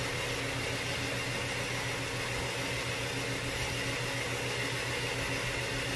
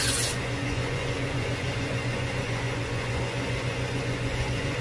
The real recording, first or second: first